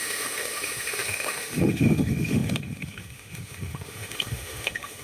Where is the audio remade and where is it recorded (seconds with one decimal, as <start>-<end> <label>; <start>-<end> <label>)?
0.0-5.0 remade